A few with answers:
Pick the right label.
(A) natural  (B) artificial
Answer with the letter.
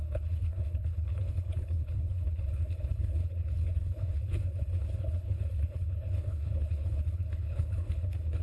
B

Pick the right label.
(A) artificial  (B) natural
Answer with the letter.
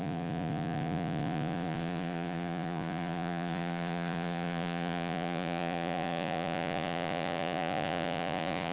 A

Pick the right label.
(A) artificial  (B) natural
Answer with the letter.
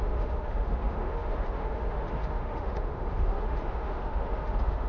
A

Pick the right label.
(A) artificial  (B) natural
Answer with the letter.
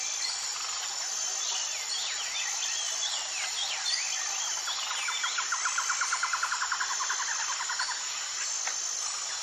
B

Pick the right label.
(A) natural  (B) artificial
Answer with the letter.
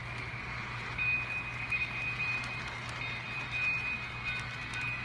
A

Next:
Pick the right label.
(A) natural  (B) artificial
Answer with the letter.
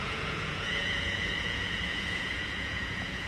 B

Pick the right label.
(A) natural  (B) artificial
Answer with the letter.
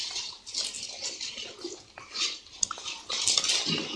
A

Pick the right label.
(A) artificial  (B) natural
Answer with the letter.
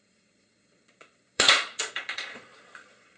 A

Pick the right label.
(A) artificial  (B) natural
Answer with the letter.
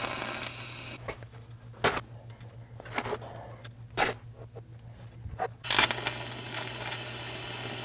B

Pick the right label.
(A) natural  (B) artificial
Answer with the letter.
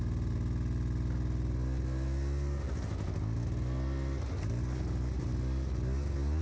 A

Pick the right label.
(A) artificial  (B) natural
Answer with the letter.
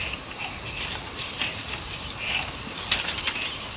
B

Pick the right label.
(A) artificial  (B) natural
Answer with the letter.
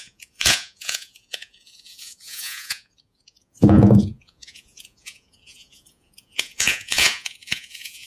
A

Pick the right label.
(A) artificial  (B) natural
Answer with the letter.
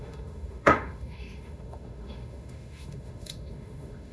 A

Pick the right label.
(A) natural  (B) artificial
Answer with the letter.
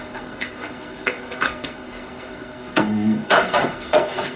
B